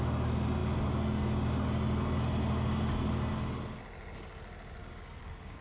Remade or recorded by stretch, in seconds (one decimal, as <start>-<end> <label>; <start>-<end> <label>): 0.0-4.8 recorded; 4.8-5.6 remade